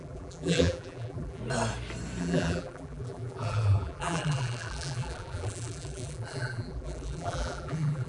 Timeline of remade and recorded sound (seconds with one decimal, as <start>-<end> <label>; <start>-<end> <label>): 0.0-1.4 remade; 1.4-2.2 recorded; 2.2-8.1 remade